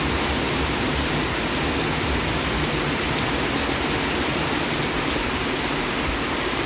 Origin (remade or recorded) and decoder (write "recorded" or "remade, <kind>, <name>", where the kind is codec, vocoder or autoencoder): recorded